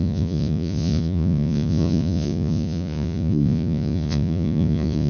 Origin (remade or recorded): remade